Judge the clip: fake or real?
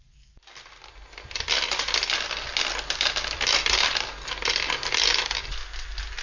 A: real